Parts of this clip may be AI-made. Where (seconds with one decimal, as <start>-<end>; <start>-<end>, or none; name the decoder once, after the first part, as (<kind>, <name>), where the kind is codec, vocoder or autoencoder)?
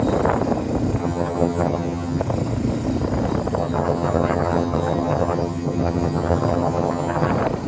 1.0-2.2 (vocoder, HiFi-GAN); 3.6-7.3